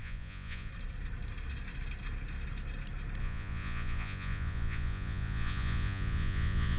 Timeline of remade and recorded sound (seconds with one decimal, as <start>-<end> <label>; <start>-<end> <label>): 0.0-0.7 remade; 0.7-3.2 recorded; 3.2-6.8 remade